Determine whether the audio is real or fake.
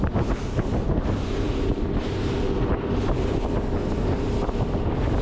real